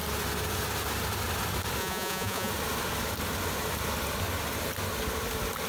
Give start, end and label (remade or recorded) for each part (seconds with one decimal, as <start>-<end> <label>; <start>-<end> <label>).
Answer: 0.0-1.8 recorded; 1.8-2.5 remade; 2.5-5.7 recorded